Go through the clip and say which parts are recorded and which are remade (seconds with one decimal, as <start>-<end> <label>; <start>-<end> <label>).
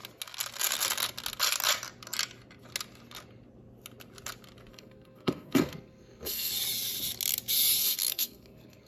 0.0-4.7 recorded; 4.7-6.5 remade; 6.5-7.8 recorded; 7.8-8.9 remade